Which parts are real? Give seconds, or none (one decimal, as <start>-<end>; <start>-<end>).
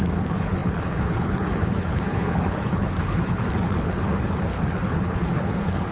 none